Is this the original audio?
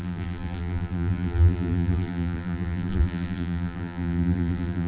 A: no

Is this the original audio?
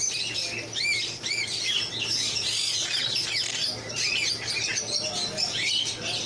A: yes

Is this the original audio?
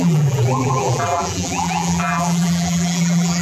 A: no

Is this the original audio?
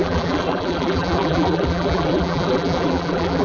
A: no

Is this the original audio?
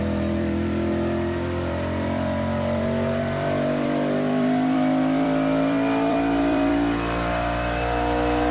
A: no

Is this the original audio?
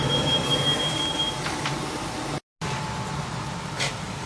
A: yes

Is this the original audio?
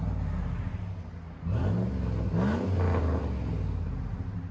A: yes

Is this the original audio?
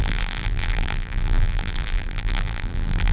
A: no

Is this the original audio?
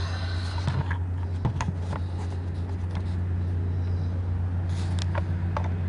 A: yes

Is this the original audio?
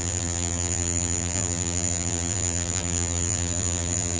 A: no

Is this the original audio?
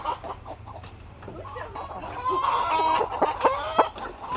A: yes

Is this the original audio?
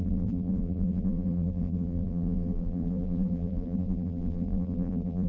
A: no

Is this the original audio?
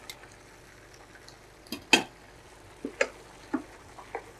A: yes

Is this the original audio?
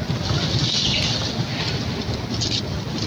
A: yes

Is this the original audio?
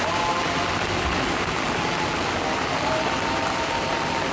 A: yes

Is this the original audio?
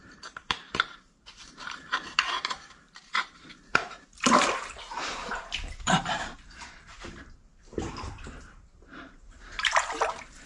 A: no